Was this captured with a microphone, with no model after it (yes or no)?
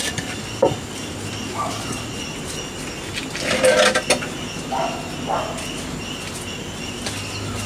yes